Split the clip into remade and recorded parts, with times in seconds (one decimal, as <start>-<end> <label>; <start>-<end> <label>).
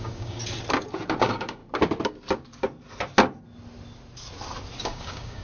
0.0-0.4 remade; 0.4-1.2 recorded; 1.2-1.6 remade; 1.6-4.8 recorded; 4.8-5.4 remade